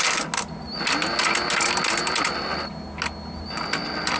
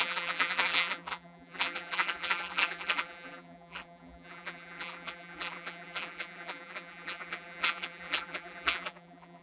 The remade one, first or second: second